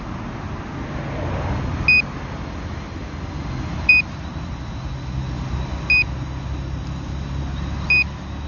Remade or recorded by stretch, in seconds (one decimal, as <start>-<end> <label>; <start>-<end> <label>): 0.0-8.5 recorded